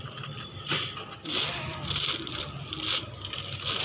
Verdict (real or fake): real